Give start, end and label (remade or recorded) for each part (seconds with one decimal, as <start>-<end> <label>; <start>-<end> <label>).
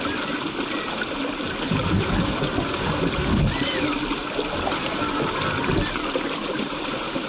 0.0-6.4 recorded; 6.4-7.3 remade